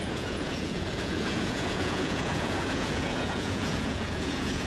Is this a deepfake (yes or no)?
yes